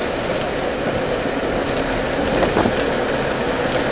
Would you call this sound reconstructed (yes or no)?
no